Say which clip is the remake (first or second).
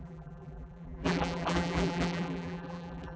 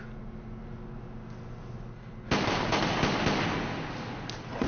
first